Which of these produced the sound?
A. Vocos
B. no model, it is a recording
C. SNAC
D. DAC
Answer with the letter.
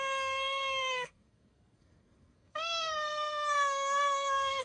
C